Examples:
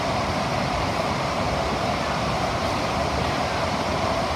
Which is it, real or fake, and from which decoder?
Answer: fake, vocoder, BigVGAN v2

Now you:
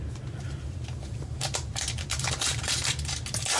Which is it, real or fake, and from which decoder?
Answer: fake, vocoder, BigVGAN v2